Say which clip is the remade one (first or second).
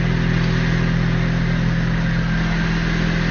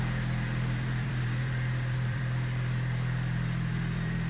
second